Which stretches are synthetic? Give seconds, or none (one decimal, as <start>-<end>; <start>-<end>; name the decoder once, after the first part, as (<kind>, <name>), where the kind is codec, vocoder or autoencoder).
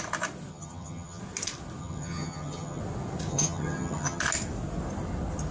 0.5-1.2 (vocoder, HiFi-GAN); 1.8-2.8; 3.3-4.2